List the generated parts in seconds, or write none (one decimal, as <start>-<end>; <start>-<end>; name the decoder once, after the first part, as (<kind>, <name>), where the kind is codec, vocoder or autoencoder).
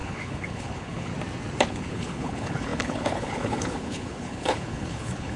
0.0-1.1 (codec, HILCodec); 1.7-5.4